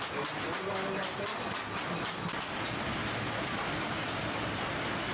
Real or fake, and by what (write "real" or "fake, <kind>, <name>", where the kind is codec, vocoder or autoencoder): real